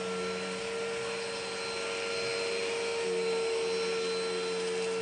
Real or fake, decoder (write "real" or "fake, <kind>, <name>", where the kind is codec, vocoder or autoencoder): real